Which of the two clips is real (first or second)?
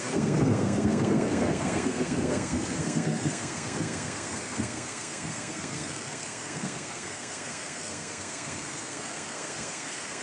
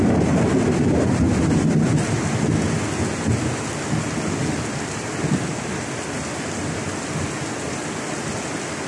second